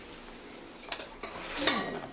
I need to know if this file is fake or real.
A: real